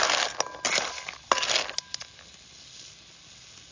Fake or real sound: real